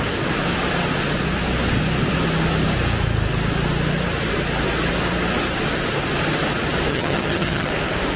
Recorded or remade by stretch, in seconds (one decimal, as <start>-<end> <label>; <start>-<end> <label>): 0.0-6.9 recorded; 6.9-7.7 remade; 7.7-8.2 recorded